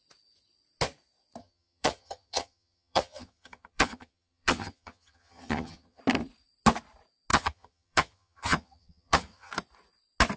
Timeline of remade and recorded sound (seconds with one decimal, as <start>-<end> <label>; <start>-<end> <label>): 0.0-1.4 recorded; 1.4-6.0 remade; 6.0-7.3 recorded; 7.3-9.5 remade; 9.5-10.4 recorded